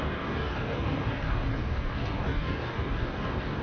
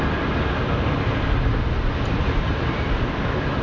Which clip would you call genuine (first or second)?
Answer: second